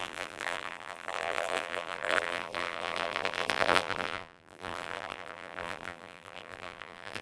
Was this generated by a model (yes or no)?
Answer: yes